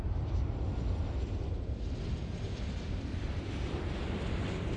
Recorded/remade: recorded